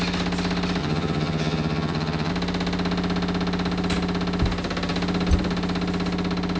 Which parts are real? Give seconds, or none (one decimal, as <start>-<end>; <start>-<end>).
0.0-0.8; 2.3-6.6